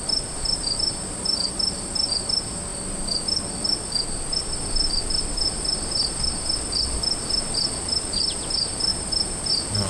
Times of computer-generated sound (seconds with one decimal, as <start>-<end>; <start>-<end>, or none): none